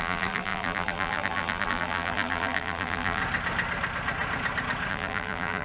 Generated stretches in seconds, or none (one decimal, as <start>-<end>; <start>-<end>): 0.0-3.2; 4.9-5.6